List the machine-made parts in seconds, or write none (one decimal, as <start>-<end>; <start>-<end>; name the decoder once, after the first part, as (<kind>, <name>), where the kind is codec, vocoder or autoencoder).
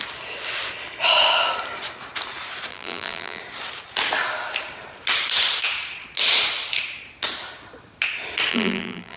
2.7-3.4 (vocoder, BigVGAN v2); 8.5-9.2